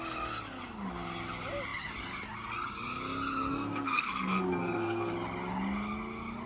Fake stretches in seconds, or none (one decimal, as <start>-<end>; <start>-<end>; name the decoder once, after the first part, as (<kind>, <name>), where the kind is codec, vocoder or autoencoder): 3.5-5.1 (codec, SNAC)